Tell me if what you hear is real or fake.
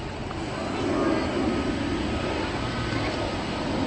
real